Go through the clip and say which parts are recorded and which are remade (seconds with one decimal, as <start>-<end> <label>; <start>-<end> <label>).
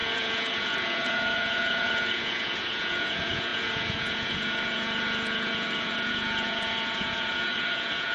0.0-8.1 remade